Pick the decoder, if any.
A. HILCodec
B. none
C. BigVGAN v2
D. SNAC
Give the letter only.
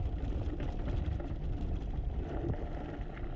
B